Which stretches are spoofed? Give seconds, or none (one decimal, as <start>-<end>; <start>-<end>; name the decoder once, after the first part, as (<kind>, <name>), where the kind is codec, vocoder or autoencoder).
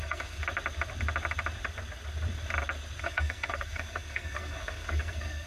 0.0-0.4 (codec, SNAC); 3.0-5.5